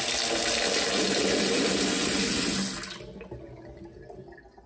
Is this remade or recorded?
recorded